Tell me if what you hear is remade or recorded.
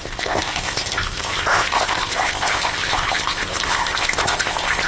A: remade